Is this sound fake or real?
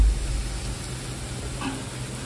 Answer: real